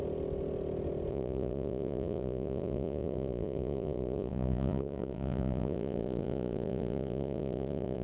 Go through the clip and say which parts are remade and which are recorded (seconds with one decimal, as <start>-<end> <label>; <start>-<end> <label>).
0.0-1.1 recorded; 1.1-8.0 remade